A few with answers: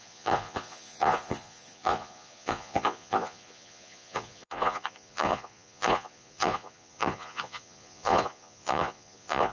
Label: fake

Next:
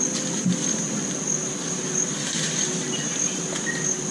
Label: real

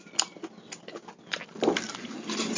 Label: real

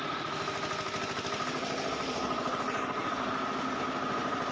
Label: real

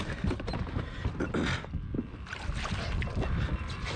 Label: real